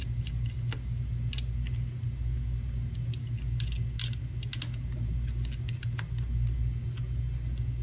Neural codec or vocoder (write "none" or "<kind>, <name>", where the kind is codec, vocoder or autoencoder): none